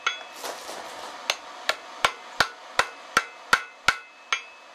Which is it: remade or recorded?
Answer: recorded